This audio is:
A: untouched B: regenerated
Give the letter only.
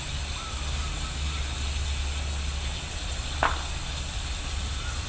A